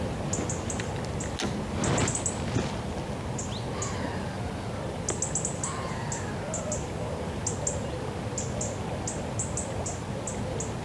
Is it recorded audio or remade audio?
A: recorded